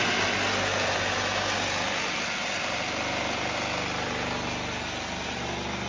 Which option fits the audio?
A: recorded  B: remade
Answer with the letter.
A